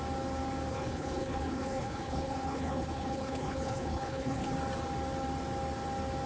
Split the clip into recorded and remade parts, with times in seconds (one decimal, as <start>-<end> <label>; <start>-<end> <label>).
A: 0.0-0.7 recorded; 0.7-4.5 remade; 4.5-6.3 recorded